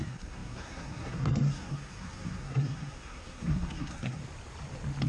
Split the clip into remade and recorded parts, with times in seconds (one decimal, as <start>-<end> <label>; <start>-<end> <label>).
0.0-4.2 remade; 4.2-5.1 recorded